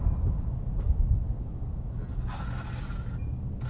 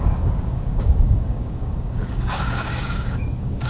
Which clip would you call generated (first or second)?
second